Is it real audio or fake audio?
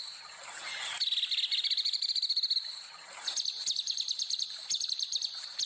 real